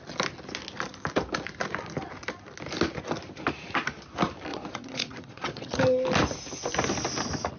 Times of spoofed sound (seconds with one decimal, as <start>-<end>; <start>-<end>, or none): 4.5-5.8